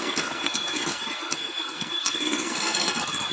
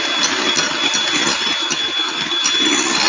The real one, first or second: second